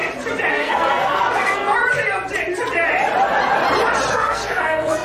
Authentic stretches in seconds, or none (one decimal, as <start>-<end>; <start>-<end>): 0.0-0.5; 1.8-4.1

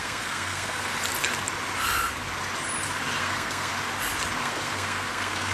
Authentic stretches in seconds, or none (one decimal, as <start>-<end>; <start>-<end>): 0.9-3.2; 3.7-4.4

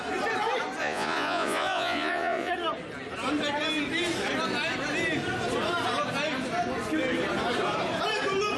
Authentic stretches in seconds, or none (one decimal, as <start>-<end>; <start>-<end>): 0.0-0.8; 2.5-8.6

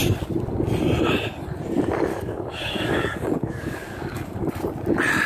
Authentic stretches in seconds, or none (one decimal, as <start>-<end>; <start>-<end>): 0.0-2.1; 4.4-5.3

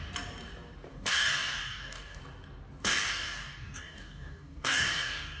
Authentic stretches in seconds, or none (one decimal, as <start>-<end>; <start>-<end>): 0.0-0.9; 2.2-2.8

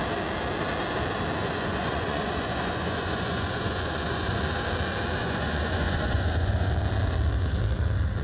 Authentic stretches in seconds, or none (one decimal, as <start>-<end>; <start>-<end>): 0.0-1.4; 4.4-5.2; 6.7-8.2